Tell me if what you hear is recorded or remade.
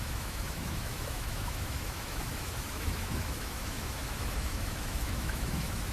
remade